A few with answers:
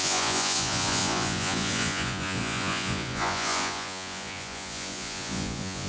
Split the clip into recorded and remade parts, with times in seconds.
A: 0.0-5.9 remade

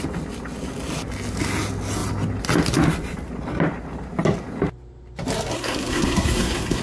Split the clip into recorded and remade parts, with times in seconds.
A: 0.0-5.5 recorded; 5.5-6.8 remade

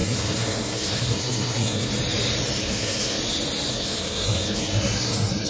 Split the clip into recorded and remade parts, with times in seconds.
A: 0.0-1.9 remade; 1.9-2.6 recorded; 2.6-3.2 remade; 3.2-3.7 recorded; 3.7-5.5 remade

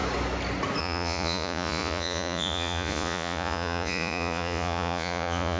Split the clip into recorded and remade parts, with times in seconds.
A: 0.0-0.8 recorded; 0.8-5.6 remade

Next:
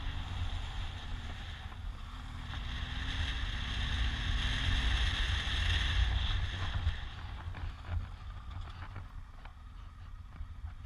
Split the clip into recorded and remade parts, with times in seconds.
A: 0.0-9.5 recorded; 9.5-10.9 remade

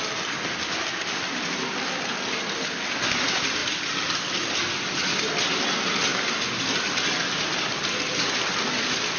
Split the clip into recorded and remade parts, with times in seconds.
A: 0.0-9.2 recorded